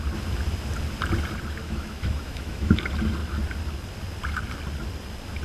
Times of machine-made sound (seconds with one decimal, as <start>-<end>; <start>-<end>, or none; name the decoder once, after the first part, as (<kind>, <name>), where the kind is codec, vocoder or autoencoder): 1.6-2.8 (autoencoder, DAC-VAE)